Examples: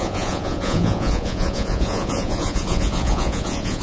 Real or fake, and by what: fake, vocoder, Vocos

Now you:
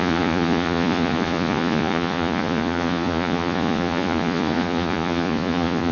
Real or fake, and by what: fake, vocoder, Vocos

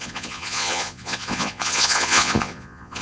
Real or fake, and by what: fake, vocoder, Vocos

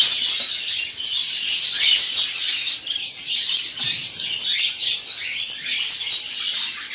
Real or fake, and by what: real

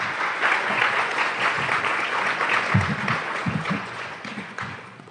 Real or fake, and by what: fake, vocoder, Vocos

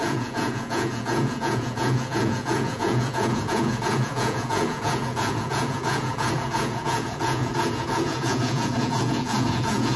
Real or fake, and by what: fake, vocoder, Vocos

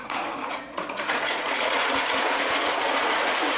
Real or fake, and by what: fake, vocoder, Vocos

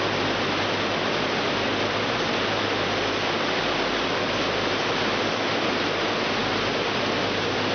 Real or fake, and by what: real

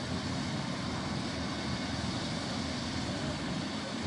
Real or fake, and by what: real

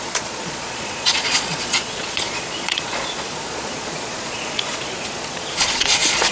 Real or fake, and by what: fake, vocoder, Vocos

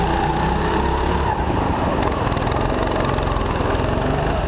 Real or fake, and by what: real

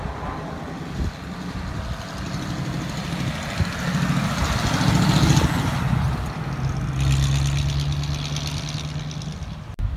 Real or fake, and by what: real